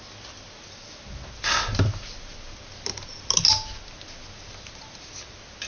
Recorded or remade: recorded